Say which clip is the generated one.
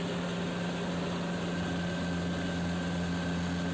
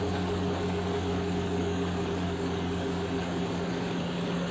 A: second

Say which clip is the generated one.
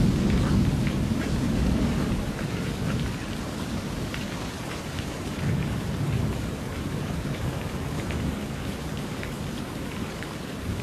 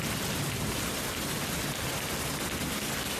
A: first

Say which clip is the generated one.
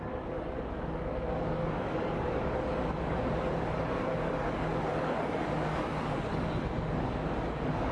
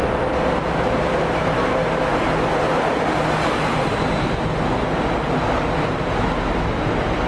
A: first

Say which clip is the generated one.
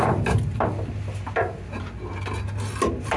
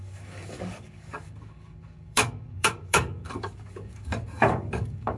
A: second